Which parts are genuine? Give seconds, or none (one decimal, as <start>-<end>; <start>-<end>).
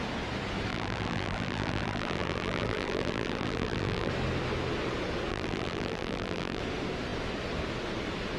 0.0-0.7; 4.1-5.3; 6.6-8.4